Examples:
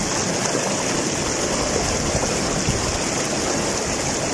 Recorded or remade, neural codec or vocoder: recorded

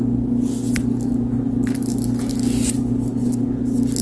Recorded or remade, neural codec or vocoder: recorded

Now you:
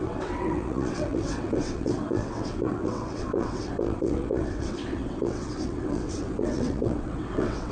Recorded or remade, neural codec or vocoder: remade, vocoder, WaveNeXt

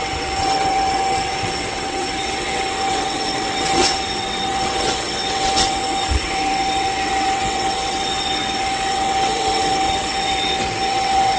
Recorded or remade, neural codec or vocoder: remade, vocoder, WaveNeXt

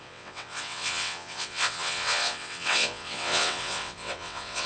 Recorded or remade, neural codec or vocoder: remade, vocoder, WaveNeXt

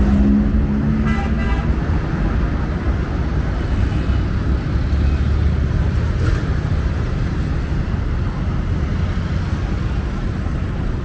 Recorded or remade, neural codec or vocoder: recorded